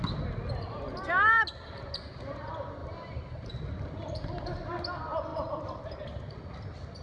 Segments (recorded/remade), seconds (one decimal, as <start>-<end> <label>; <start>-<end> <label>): 0.0-2.8 recorded; 2.8-3.5 remade; 3.5-7.0 recorded